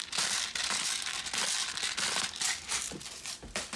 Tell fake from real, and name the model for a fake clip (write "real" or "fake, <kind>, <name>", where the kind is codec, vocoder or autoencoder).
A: real